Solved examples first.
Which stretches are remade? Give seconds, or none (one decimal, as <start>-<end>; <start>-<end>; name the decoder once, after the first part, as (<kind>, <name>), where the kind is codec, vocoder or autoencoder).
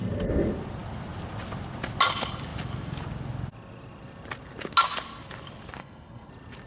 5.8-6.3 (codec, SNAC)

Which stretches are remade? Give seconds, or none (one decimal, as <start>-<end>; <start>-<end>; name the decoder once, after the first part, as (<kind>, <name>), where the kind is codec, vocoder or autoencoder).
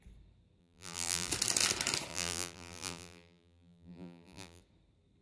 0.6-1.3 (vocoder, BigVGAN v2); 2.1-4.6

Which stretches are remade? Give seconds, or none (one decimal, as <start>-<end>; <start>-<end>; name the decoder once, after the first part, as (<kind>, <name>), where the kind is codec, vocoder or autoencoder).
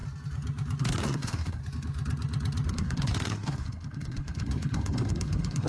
0.8-1.6 (codec, SNAC); 2.7-5.7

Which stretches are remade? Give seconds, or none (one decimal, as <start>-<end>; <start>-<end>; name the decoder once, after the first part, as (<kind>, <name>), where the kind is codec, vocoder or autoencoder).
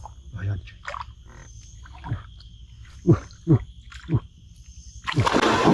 none